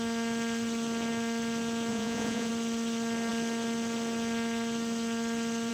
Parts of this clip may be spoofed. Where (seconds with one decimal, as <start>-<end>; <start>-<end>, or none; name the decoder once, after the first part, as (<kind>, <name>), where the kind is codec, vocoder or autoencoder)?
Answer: 1.9-2.5 (vocoder, Vocos)